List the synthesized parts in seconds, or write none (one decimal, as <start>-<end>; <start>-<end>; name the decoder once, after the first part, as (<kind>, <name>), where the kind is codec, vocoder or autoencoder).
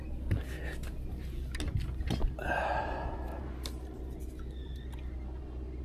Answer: none